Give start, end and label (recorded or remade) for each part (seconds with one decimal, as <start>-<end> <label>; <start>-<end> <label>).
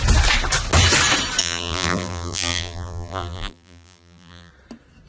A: 0.0-1.4 recorded; 1.4-4.5 remade; 4.5-5.1 recorded